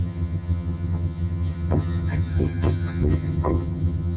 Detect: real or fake fake